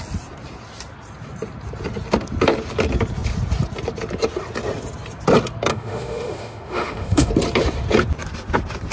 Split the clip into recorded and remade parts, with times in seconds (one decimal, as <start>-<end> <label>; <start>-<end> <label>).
0.0-5.7 recorded; 5.7-7.3 remade; 7.3-8.9 recorded